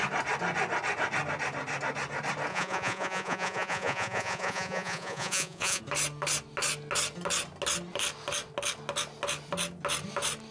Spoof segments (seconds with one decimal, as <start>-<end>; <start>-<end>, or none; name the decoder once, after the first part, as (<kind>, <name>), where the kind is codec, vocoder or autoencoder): 2.5-5.8 (vocoder, Vocos)